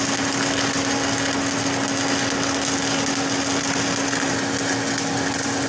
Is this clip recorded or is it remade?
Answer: recorded